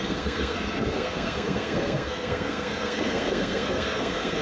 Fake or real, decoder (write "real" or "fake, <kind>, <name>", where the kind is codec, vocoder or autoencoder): fake, codec, SNAC